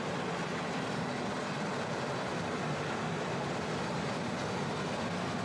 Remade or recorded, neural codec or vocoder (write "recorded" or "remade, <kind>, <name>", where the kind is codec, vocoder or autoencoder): recorded